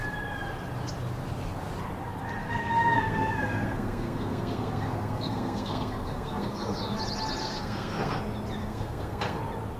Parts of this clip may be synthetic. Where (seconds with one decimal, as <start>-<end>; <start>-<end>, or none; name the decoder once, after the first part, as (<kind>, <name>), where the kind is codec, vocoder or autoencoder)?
2.4-7.0 (codec, SNAC); 7.4-8.2; 8.6-9.4